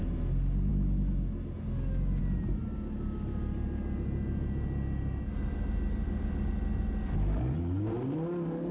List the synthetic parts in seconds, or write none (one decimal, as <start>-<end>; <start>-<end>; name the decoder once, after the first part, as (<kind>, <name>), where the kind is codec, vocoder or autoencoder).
none